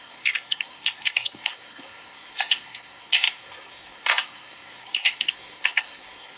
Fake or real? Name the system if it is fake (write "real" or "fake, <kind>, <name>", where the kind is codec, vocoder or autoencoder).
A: fake, codec, SNAC